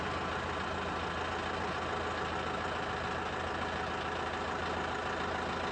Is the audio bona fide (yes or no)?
yes